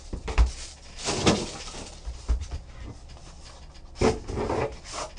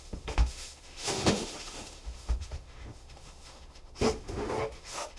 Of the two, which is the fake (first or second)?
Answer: second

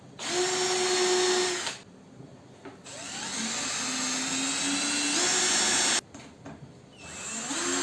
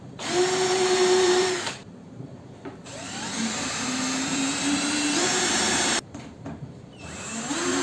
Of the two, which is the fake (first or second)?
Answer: second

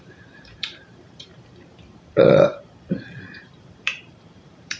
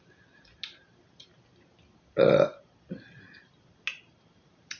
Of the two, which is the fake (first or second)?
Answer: first